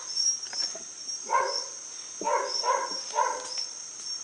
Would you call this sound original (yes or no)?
yes